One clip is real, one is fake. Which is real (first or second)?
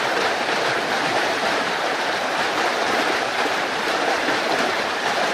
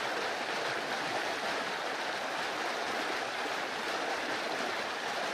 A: second